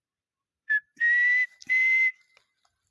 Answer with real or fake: real